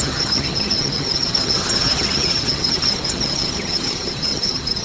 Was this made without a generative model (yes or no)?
no